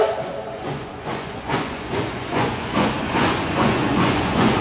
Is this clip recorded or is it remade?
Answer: remade